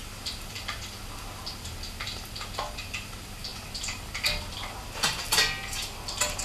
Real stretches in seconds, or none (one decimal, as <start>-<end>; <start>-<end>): 0.0-6.4